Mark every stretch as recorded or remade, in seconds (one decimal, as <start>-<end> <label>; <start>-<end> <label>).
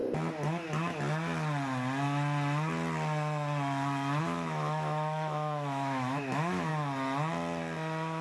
0.0-4.2 recorded; 4.2-6.7 remade; 6.7-8.2 recorded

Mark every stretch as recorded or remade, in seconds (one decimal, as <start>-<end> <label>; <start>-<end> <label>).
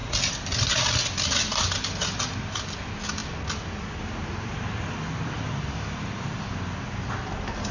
0.0-7.7 recorded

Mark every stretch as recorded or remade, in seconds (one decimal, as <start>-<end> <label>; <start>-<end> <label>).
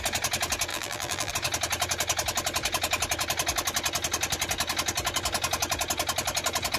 0.0-0.7 recorded; 0.7-1.3 remade; 1.3-6.8 recorded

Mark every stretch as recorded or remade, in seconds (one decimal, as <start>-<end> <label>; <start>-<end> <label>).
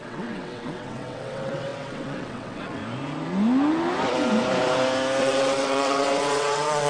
0.0-2.8 remade; 2.8-5.2 recorded; 5.2-6.9 remade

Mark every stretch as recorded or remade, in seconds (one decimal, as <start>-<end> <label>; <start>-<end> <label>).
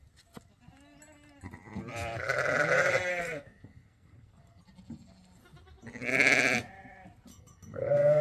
0.0-3.1 recorded; 3.1-4.6 remade; 4.6-7.3 recorded; 7.3-8.2 remade